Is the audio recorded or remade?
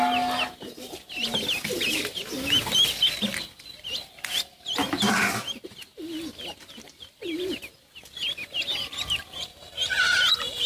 recorded